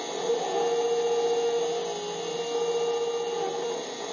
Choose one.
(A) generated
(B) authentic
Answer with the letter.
B